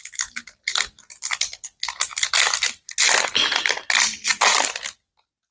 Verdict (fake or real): real